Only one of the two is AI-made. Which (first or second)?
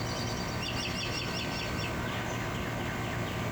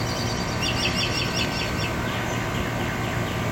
first